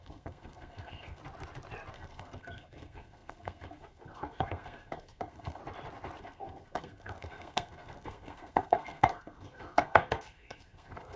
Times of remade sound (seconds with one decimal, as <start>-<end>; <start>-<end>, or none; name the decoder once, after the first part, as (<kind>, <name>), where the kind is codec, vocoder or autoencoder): 0.0-1.2 (codec, SNAC); 1.9-5.6; 6.2-11.2